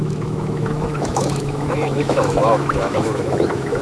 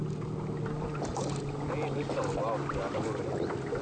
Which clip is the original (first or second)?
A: second